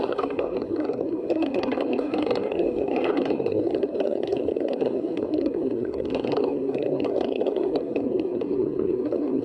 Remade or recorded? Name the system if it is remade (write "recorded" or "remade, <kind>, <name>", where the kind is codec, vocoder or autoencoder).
remade, codec, SNAC